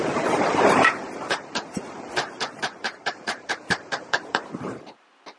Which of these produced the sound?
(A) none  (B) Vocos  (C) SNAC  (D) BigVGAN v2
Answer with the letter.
D